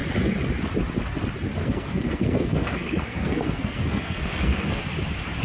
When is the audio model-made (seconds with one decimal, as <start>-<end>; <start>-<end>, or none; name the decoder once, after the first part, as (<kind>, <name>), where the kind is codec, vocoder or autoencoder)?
1.6-4.8 (codec, SNAC)